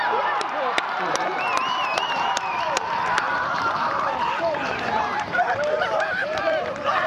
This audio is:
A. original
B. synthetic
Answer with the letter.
B